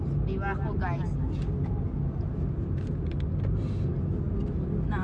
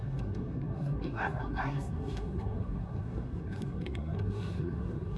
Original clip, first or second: first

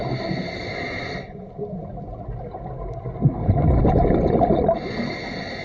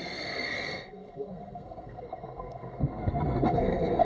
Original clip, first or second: first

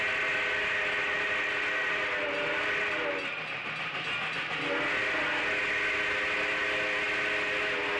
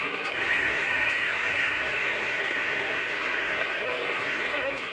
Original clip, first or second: first